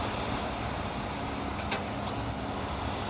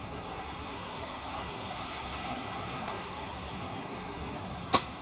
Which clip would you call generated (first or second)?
second